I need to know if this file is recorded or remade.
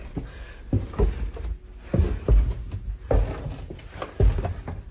recorded